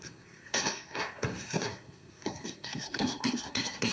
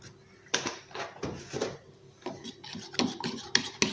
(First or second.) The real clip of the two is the second